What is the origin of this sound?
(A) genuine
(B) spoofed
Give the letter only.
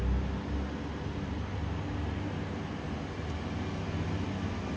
A